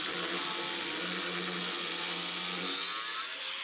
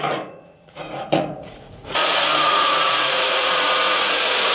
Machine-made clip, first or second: second